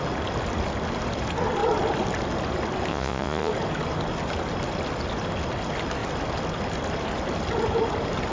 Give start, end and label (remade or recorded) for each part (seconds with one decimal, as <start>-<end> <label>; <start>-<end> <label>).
0.0-2.9 recorded; 2.9-3.5 remade; 3.5-8.3 recorded

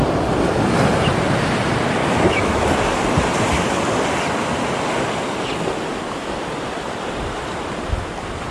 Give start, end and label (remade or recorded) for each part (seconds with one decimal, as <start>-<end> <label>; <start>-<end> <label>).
0.0-2.0 recorded; 2.0-2.6 remade; 2.6-8.5 recorded

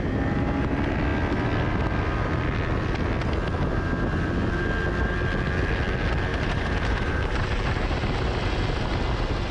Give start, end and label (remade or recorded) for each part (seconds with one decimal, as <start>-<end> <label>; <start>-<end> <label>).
0.0-6.3 recorded; 6.3-7.6 remade; 7.6-9.5 recorded

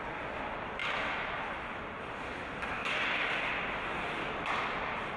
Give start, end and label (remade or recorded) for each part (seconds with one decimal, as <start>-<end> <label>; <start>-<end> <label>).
0.0-5.2 recorded

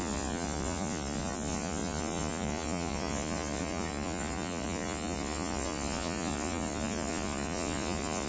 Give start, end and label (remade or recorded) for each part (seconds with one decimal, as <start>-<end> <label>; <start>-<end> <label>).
0.0-8.3 remade